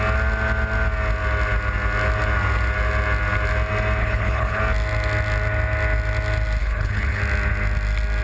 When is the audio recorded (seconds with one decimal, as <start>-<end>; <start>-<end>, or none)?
0.0-4.0; 4.6-6.6; 7.2-8.2